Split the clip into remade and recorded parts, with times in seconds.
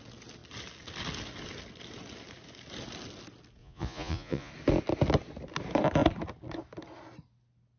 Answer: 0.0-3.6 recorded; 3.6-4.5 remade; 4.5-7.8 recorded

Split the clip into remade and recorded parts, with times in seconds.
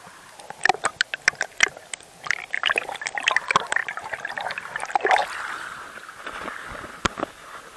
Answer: 0.0-7.8 recorded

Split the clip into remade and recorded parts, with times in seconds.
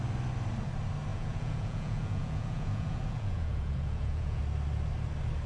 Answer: 0.0-1.1 recorded; 1.1-4.4 remade; 4.4-5.5 recorded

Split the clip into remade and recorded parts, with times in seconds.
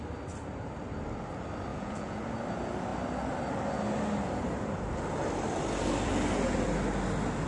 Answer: 0.0-1.7 recorded; 1.7-2.2 remade; 2.2-7.5 recorded